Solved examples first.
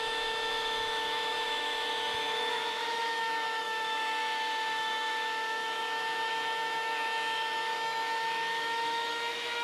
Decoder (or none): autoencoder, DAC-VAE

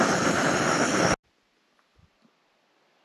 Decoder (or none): none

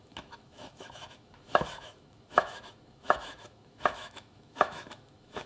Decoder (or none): autoencoder, DAC-VAE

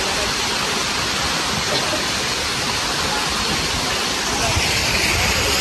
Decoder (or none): none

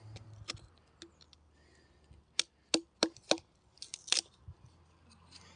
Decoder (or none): none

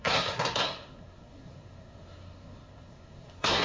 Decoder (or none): codec, SNAC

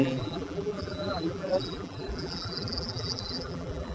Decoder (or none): vocoder, BigVGAN v2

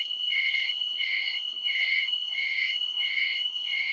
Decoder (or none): codec, SNAC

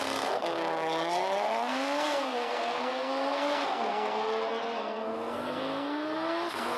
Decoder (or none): codec, SNAC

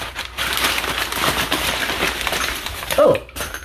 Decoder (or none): vocoder, BigVGAN v2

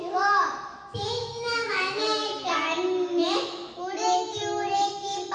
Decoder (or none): autoencoder, DAC-VAE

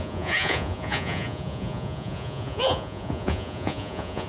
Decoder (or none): vocoder, Vocos